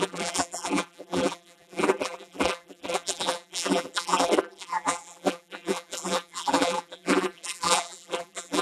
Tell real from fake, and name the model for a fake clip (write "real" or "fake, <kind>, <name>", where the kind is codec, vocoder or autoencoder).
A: fake, vocoder, BigVGAN v2